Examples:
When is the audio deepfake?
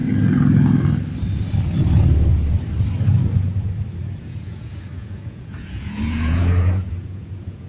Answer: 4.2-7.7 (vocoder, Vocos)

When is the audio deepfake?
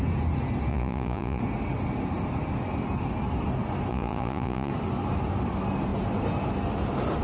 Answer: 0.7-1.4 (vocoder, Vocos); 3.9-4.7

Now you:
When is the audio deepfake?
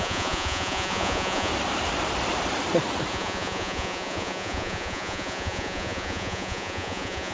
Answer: 0.0-1.5 (vocoder, Vocos); 3.1-7.3